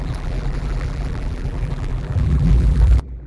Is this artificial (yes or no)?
yes